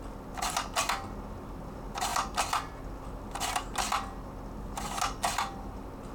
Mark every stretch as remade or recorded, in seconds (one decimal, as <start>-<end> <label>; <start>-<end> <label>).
0.0-6.1 recorded